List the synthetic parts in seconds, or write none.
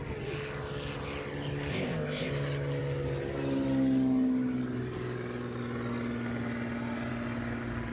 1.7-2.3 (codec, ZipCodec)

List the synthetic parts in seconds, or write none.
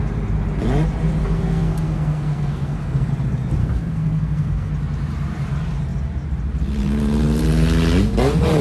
1.2-3.1 (codec, SNAC); 3.6-4.7